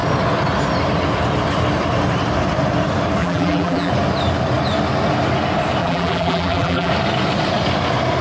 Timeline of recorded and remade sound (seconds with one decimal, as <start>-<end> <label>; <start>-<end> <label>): 0.0-3.2 recorded; 3.2-3.9 remade; 3.9-5.8 recorded; 5.8-6.9 remade; 6.9-8.2 recorded